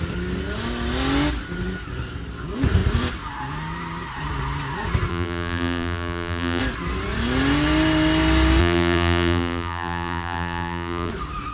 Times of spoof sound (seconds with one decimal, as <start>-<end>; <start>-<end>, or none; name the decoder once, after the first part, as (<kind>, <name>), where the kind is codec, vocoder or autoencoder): 5.1-6.6 (vocoder, BigVGAN v2); 8.6-11.1